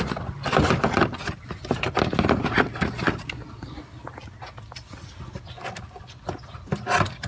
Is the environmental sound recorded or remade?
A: recorded